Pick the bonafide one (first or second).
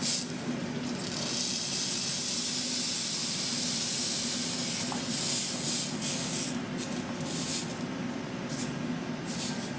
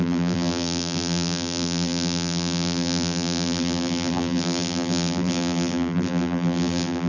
first